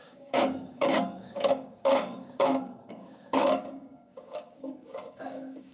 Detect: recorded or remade remade